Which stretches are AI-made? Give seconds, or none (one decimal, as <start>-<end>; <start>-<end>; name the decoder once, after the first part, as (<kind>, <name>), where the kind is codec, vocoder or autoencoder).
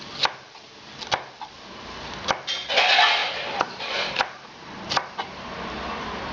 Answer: 3.2-4.2 (vocoder, BigVGAN v2)